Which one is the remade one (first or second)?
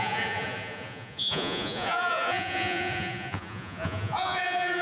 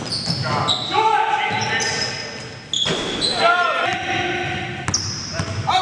first